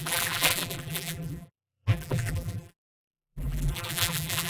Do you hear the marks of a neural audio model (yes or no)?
yes